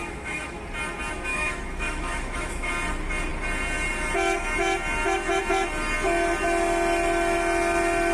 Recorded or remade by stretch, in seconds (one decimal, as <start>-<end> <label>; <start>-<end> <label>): 0.0-0.6 remade; 0.6-1.3 recorded; 1.3-2.7 remade; 2.7-8.1 recorded

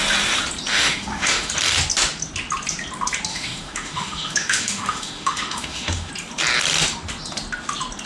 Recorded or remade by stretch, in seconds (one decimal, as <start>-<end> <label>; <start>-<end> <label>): 0.0-0.7 recorded; 0.7-1.5 remade; 1.5-3.3 recorded; 3.3-6.1 remade; 6.1-8.1 recorded